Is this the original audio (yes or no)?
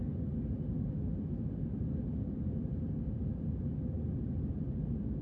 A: yes